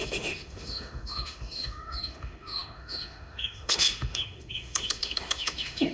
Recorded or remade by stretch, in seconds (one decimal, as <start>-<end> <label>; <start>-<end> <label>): 0.0-5.9 remade